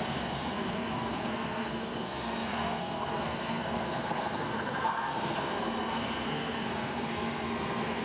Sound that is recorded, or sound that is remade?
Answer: remade